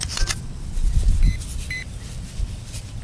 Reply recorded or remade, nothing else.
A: remade